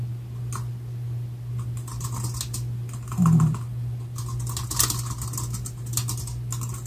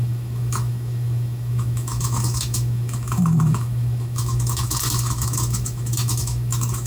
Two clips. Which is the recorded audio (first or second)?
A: first